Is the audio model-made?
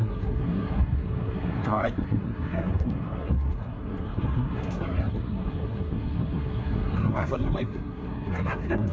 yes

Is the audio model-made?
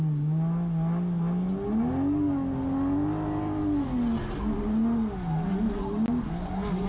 no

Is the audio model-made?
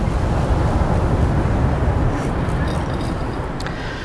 no